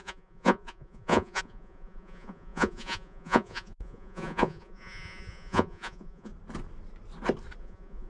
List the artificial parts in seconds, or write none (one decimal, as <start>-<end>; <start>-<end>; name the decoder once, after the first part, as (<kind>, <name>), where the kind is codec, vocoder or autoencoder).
0.0-6.3 (vocoder, Vocos); 7.6-8.1